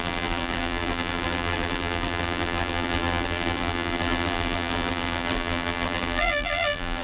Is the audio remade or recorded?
remade